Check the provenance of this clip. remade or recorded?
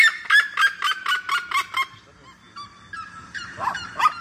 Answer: recorded